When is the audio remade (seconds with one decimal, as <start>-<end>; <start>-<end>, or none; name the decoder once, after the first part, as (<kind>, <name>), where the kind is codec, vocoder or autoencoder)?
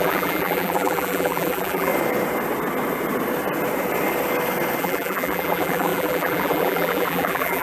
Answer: 0.0-1.9 (vocoder, BigVGAN v2); 4.8-7.6